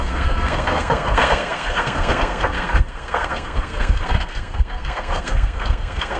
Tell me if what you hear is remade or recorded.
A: remade